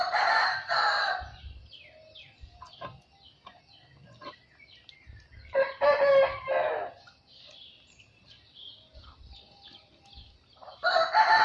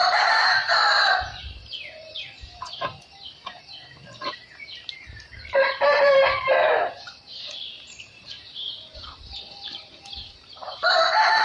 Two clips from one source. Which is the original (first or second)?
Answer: first